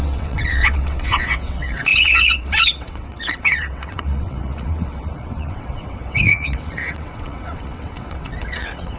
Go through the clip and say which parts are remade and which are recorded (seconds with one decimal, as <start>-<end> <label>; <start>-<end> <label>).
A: 0.0-9.0 remade